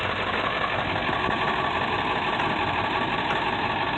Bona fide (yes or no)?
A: yes